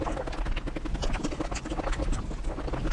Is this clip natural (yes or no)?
yes